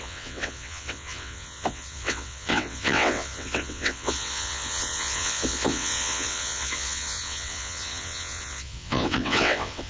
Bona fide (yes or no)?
no